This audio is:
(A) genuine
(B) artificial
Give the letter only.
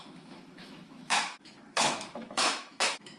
B